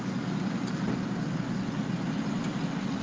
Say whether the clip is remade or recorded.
recorded